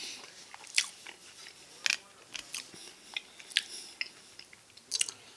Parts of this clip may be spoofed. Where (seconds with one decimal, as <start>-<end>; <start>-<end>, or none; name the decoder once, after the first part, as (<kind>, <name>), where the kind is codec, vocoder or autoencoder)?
none

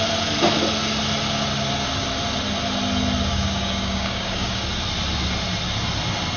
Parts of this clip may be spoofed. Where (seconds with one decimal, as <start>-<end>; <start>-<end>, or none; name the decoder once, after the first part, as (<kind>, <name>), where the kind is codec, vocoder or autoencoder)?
3.3-4.6 (codec, DAC)

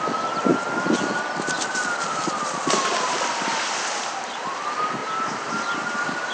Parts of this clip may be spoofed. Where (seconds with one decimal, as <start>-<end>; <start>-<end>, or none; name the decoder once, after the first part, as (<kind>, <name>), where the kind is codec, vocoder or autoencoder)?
none

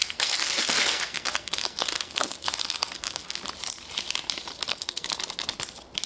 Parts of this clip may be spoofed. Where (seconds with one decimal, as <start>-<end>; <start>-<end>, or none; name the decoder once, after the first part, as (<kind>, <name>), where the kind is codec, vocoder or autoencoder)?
0.0-3.4 (codec, SNAC); 4.7-5.2

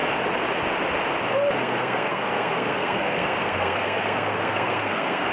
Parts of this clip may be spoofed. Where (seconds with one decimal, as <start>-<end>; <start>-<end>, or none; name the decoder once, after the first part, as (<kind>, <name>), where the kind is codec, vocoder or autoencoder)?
1.6-5.3 (codec, SNAC)